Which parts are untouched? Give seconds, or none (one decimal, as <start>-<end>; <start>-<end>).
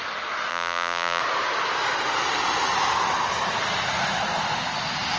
0.0-0.5; 1.2-5.2